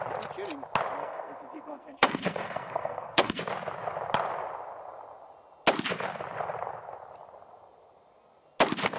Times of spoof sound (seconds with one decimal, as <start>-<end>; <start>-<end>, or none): 1.0-3.4